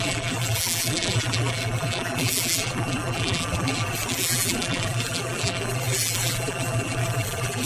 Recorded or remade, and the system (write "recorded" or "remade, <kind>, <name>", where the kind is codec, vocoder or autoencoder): remade, vocoder, BigVGAN v2